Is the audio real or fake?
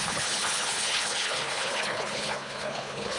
fake